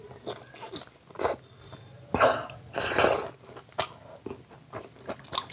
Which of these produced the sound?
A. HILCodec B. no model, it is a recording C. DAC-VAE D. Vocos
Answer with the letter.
B